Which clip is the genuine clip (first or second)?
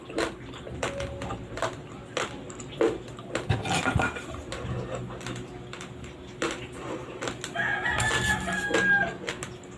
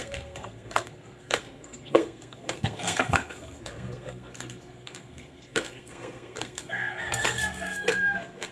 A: first